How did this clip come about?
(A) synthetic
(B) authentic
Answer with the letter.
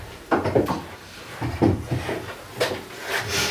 B